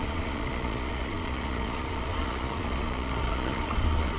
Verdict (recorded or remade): remade